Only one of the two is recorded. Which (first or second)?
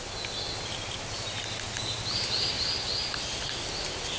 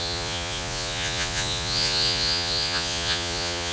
first